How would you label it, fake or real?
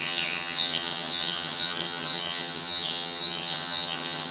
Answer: fake